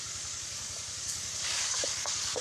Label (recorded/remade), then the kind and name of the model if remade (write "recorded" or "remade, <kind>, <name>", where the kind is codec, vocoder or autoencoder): remade, codec, DAC